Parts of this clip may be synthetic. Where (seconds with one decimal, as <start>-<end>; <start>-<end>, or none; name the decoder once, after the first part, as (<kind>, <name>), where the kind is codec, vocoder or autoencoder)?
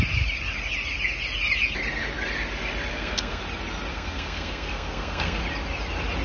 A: 2.9-3.4 (codec, SNAC); 3.9-5.4